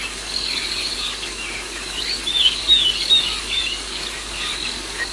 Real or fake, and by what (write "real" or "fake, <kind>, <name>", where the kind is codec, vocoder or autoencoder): fake, codec, DAC